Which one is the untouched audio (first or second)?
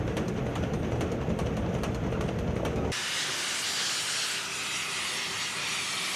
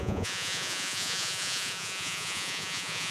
first